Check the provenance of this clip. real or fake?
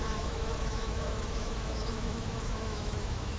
fake